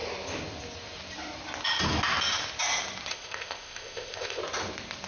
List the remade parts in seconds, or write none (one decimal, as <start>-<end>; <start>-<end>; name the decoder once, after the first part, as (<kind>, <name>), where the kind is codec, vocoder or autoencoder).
3.1-4.4 (codec, ZipCodec)